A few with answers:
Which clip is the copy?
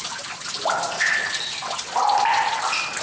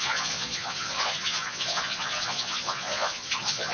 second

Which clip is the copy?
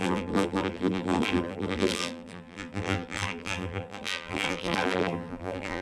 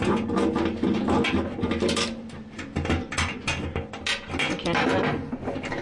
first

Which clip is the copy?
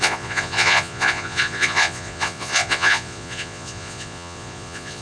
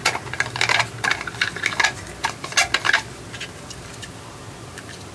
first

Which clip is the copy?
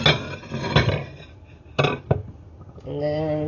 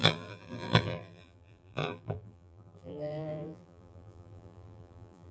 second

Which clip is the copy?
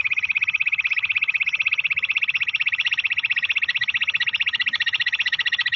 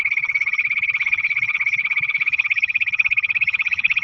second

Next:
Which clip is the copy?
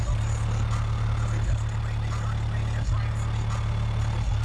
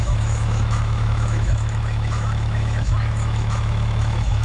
second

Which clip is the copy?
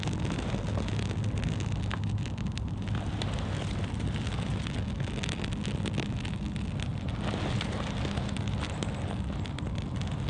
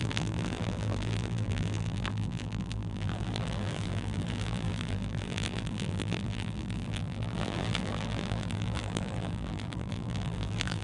second